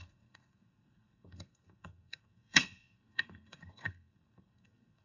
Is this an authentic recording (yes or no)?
no